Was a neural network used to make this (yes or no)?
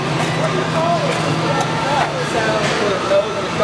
no